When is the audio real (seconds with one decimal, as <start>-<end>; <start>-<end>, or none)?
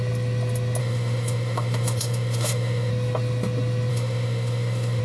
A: 0.0-0.8; 2.9-3.9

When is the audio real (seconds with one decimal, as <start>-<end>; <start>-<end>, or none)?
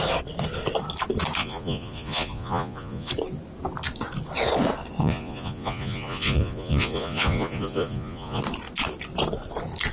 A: 0.0-1.4; 3.1-5.0; 8.4-9.9